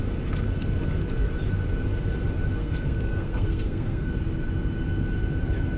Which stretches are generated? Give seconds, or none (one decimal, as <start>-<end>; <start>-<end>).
2.6-4.1